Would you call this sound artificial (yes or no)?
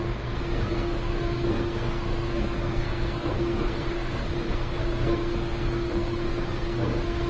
yes